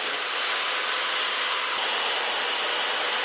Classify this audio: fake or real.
real